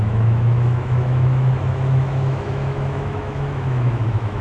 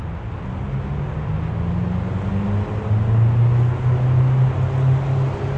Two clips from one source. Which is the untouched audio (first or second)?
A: second